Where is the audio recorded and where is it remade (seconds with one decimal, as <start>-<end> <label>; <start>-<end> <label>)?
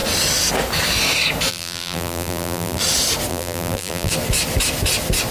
0.0-1.5 recorded; 1.5-2.8 remade; 2.8-3.3 recorded; 3.3-4.1 remade; 4.1-5.3 recorded